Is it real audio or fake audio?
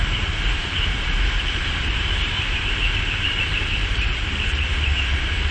fake